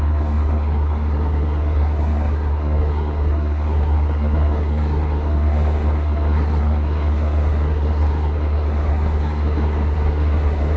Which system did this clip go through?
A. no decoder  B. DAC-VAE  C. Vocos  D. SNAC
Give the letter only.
D